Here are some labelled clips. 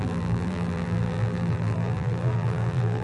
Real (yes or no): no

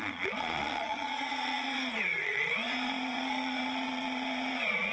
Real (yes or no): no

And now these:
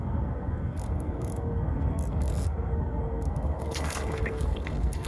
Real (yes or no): no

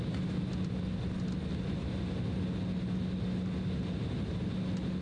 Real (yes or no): yes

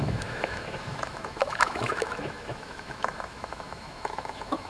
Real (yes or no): no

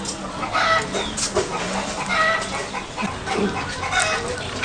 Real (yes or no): yes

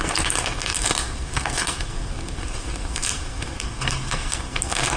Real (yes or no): no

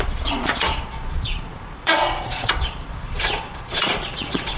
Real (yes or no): no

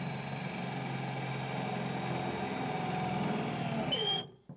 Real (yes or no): yes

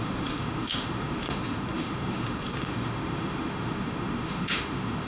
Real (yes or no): no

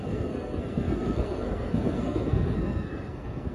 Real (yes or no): no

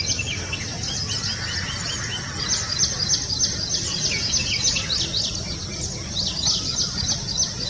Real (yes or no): yes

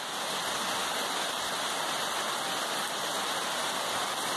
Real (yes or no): yes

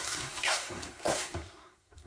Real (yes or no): no